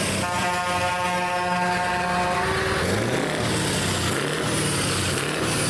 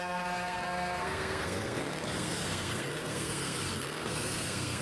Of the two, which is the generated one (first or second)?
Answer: second